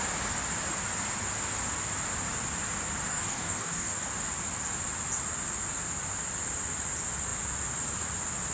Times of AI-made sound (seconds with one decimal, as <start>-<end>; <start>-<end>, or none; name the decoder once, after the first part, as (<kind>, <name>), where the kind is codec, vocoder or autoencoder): 3.1-4.1 (codec, DAC)